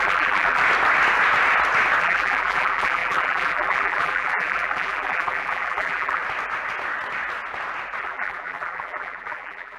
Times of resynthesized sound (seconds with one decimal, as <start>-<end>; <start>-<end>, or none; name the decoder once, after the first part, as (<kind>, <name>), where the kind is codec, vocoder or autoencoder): 0.0-0.6 (vocoder, BigVGAN v2); 2.0-6.2; 8.0-9.8